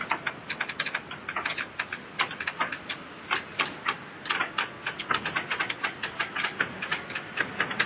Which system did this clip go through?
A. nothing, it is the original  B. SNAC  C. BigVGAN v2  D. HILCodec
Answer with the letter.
A